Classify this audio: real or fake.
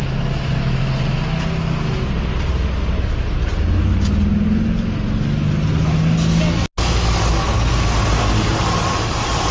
real